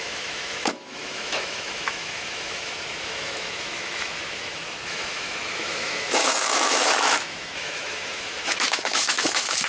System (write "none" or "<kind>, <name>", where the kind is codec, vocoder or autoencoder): autoencoder, DAC-VAE